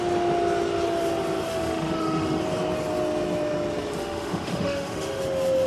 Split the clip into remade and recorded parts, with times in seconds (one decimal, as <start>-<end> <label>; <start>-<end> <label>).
0.0-1.5 recorded; 1.5-2.4 remade; 2.4-4.0 recorded; 4.0-5.2 remade; 5.2-5.7 recorded